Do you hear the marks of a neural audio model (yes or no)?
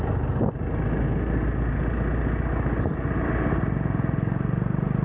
no